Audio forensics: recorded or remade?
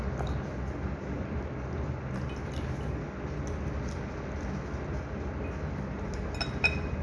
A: recorded